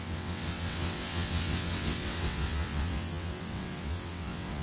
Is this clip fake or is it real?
fake